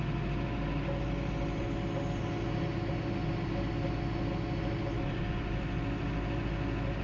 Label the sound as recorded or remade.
recorded